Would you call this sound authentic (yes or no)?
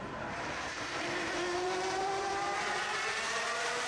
no